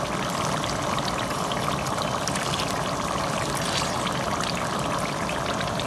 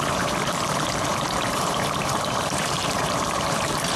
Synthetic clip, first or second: second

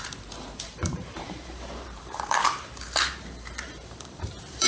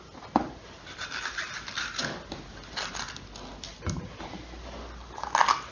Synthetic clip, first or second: first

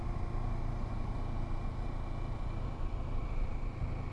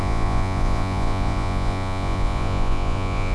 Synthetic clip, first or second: second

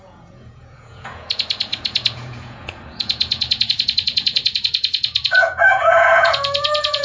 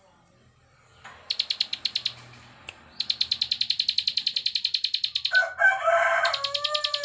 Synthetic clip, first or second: first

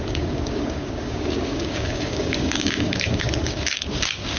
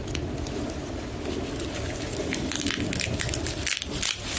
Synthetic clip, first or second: first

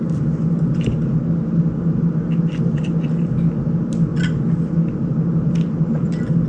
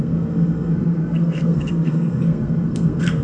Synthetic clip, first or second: second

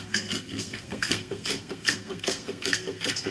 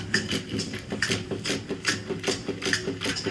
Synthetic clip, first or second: first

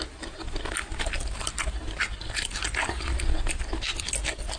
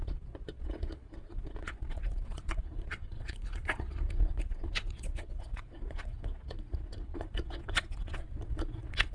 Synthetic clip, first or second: second